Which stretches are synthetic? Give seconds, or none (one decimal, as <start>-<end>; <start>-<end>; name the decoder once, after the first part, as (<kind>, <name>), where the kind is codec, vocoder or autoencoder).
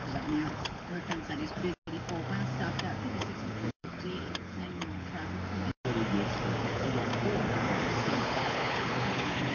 0.0-1.6 (codec, HILCodec); 3.1-5.1; 6.6-7.1; 8.0-9.5